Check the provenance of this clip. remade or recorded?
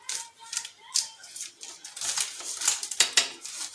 recorded